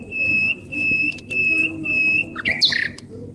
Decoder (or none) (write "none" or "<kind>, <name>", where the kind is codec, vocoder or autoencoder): none